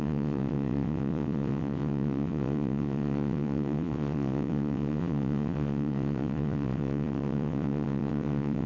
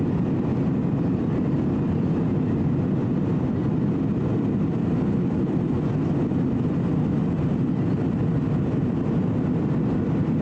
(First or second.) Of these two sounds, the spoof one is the first